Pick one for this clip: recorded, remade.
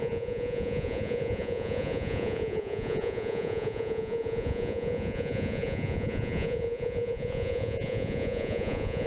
remade